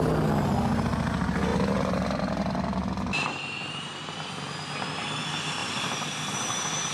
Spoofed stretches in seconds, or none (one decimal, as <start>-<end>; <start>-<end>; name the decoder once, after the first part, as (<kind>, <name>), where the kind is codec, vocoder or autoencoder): 1.5-2.8 (vocoder, BigVGAN v2); 5.6-6.3